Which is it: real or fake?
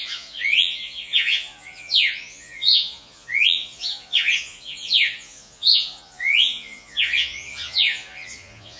fake